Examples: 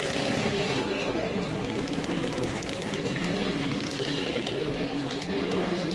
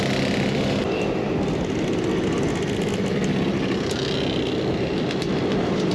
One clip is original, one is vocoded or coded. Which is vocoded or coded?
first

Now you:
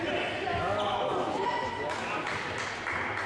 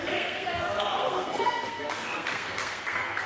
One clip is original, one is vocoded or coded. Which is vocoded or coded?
second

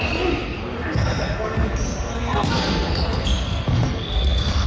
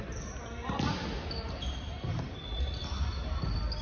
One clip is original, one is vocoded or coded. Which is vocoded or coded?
first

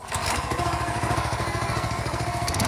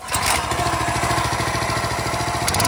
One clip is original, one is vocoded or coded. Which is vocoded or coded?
first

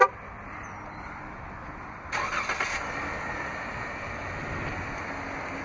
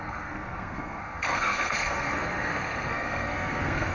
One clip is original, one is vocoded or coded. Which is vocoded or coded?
second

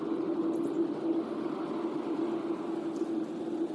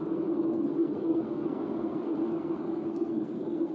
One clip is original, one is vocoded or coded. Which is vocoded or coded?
second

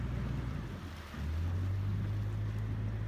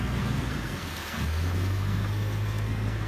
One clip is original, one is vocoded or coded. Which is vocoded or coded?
second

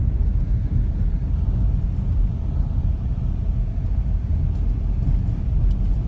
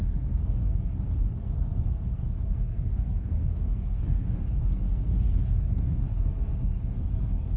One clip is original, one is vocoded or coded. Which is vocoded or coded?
second